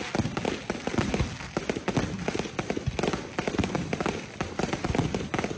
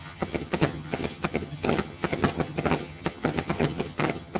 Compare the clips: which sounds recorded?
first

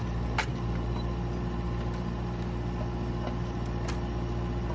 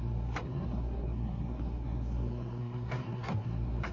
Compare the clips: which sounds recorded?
first